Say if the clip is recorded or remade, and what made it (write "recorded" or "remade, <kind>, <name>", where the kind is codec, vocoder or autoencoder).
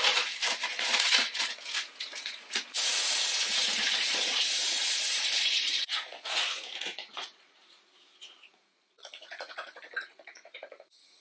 remade, vocoder, Vocos